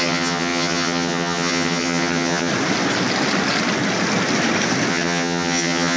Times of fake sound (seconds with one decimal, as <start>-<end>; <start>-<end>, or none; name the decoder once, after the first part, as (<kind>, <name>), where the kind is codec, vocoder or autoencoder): 0.0-2.5 (vocoder, HiFi-GAN); 4.9-6.0

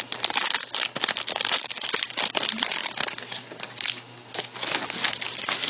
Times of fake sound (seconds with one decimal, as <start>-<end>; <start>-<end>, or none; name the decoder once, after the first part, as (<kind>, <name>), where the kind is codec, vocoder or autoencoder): none